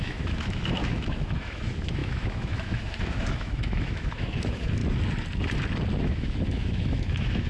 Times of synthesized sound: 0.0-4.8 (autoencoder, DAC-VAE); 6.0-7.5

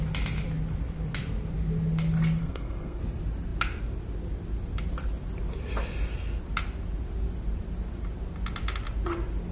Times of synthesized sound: 2.4-3.0 (codec, SNAC)

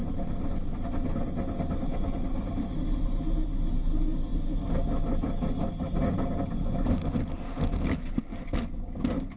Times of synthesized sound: none

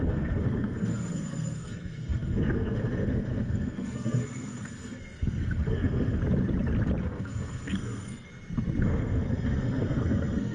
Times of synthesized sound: 0.0-6.2 (codec, SNAC); 7.0-8.3; 8.8-10.5

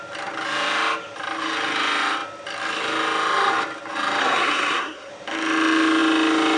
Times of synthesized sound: 4.2-5.1 (codec, SNAC)

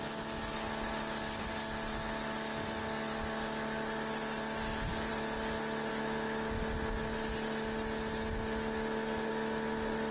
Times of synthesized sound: 5.9-6.6 (autoencoder, DAC-VAE)